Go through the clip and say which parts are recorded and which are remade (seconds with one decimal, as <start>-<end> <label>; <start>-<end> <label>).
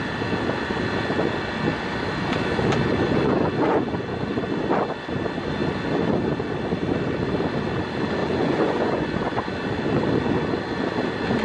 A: 0.0-2.9 recorded; 2.9-4.3 remade; 4.3-8.2 recorded; 8.2-9.4 remade; 9.4-11.4 recorded